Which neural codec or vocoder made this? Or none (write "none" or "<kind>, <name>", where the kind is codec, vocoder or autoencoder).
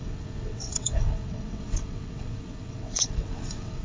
vocoder, WaveNeXt